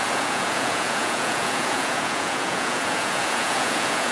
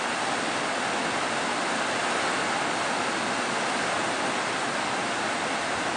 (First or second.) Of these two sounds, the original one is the second